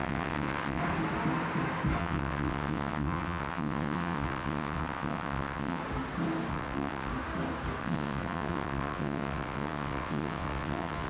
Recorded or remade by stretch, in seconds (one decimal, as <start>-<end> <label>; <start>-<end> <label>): 0.0-0.8 remade; 0.8-2.0 recorded; 2.0-5.8 remade; 5.8-6.5 recorded; 6.5-7.1 remade; 7.1-7.8 recorded; 7.8-11.1 remade